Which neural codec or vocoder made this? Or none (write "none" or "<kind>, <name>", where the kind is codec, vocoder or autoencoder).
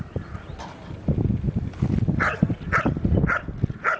none